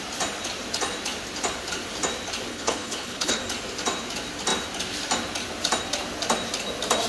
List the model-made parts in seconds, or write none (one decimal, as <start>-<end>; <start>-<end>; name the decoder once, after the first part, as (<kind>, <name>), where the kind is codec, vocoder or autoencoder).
2.5-3.4 (codec, HILCodec)